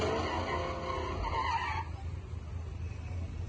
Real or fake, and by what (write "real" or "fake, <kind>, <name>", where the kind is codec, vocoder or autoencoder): real